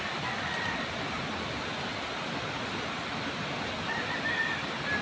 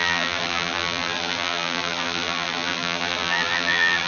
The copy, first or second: second